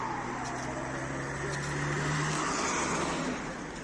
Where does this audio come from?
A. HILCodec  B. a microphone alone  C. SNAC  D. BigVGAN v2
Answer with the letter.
B